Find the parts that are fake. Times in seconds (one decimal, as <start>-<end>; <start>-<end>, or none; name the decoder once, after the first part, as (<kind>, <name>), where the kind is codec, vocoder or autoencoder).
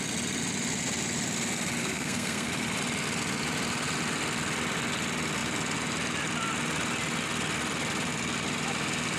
1.8-2.5 (codec, SNAC)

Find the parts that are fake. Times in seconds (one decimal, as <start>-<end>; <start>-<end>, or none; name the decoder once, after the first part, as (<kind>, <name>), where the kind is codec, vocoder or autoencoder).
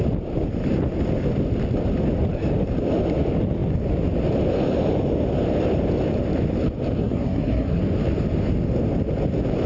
7.0-7.8 (codec, SNAC)